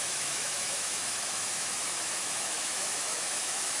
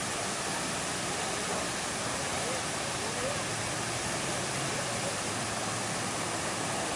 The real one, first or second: second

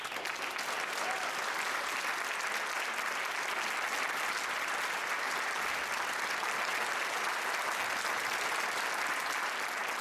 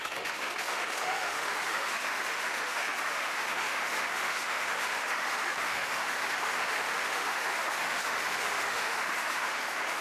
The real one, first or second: first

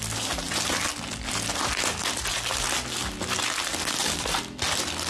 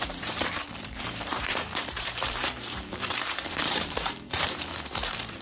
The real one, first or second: first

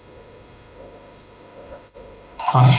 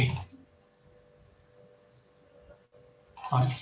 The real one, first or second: second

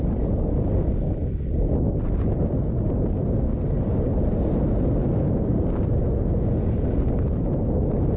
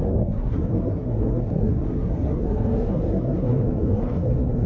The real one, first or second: first